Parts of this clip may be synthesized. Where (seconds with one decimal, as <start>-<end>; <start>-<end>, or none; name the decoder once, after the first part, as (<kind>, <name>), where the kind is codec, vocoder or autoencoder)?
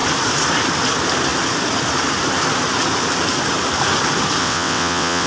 4.4-5.3 (vocoder, WaveNeXt)